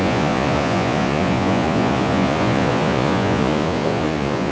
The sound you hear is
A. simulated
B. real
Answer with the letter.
A